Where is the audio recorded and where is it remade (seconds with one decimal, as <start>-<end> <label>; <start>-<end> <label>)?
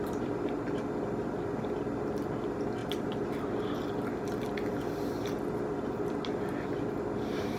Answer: 0.0-7.6 recorded